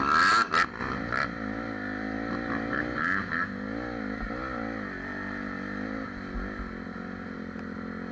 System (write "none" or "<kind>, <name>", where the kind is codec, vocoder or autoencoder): none